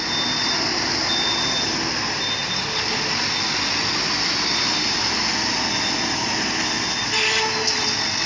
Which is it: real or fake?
real